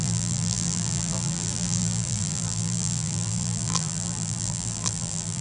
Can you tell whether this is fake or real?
fake